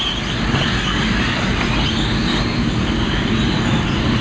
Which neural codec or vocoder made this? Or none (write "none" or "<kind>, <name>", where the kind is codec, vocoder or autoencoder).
none